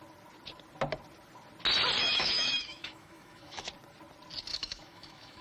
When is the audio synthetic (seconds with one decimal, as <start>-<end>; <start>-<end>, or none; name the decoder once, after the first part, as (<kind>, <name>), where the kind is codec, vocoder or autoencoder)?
2.0-3.7 (autoencoder, DAC-VAE); 4.5-5.4